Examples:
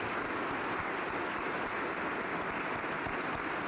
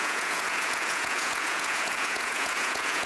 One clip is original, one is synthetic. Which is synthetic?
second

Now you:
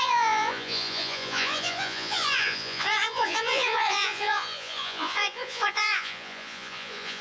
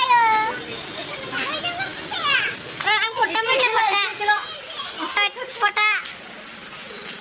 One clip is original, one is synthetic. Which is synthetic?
first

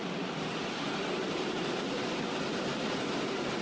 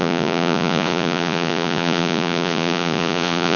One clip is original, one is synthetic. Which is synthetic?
second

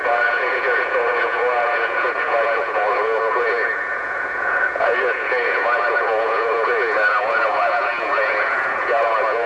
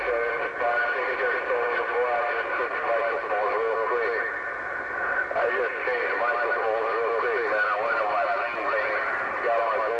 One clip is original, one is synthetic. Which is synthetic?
first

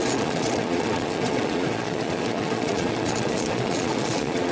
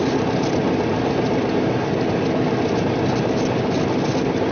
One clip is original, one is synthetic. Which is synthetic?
first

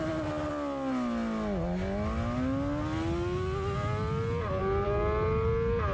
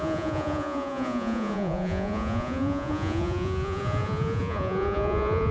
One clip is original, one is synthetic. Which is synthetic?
second